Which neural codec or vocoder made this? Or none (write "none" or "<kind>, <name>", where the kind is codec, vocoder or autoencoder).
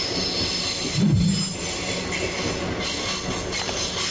none